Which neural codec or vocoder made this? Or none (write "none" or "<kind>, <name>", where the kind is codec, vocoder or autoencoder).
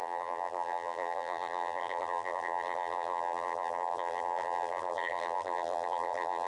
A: vocoder, BigVGAN v2